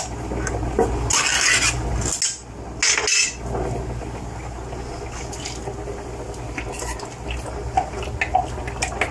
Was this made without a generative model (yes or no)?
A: yes